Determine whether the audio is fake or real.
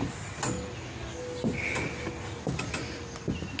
real